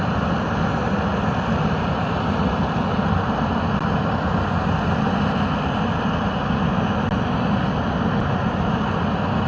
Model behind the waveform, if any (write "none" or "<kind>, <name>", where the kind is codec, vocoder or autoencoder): none